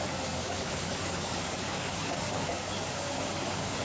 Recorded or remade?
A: remade